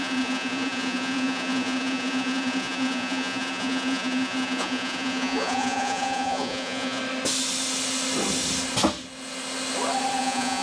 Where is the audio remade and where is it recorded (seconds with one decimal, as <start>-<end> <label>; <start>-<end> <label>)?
0.0-7.0 remade; 7.0-10.2 recorded; 10.2-10.6 remade